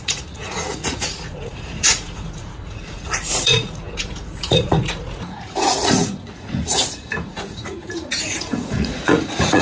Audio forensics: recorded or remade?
remade